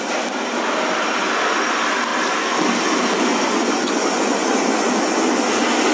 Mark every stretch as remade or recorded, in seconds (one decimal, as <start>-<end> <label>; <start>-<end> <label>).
0.0-3.3 recorded; 3.3-4.9 remade; 4.9-5.9 recorded